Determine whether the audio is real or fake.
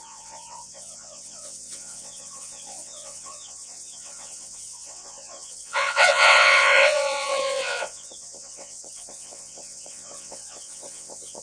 fake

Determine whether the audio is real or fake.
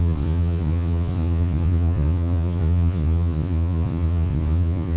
fake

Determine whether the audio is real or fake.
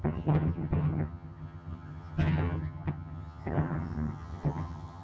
fake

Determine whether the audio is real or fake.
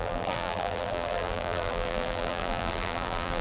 fake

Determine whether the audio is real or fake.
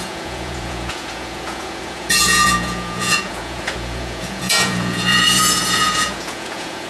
fake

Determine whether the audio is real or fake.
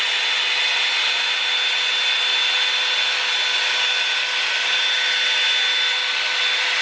real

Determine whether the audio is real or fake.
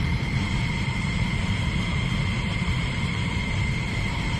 fake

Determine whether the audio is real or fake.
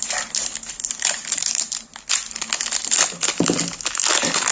real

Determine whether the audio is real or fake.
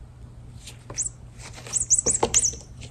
real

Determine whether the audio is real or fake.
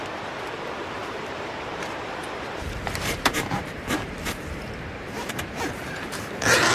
fake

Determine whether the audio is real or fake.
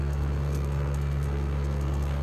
fake